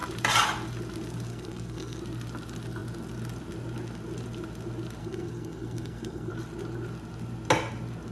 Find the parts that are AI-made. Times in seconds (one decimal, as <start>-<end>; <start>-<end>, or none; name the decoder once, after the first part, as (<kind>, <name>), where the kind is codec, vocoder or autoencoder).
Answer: 1.3-2.0 (codec, SNAC); 5.0-6.3